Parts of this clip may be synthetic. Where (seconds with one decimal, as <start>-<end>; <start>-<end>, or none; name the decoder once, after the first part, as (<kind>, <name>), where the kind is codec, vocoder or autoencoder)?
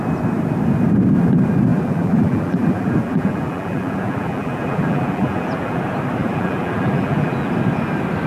1.7-5.8 (vocoder, BigVGAN v2); 6.2-7.5